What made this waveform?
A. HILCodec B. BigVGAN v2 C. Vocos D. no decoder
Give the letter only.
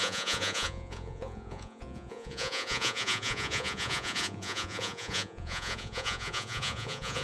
C